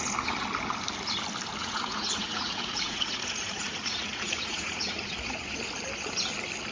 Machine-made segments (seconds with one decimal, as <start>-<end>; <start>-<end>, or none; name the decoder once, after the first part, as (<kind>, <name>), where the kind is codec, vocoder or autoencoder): 1.6-5.6 (vocoder, Vocos)